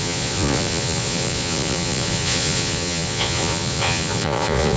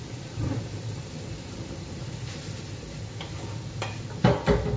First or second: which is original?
second